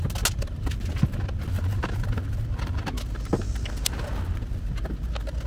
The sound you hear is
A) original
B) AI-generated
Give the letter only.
A